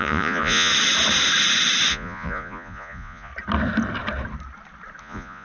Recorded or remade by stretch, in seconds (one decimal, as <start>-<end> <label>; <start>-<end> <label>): 0.0-0.7 remade; 0.7-1.9 recorded; 1.9-3.3 remade; 3.3-5.0 recorded; 5.0-5.4 remade